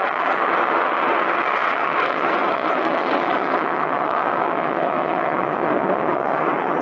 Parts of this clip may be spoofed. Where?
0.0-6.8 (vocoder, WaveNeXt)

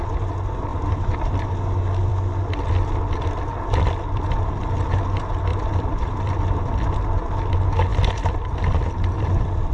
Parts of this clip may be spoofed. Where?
0.7-1.5 (vocoder, BigVGAN v2); 2.1-2.6; 5.5-6.4

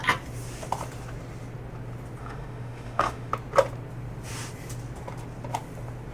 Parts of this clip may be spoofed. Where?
2.2-3.3 (autoencoder, DAC-VAE)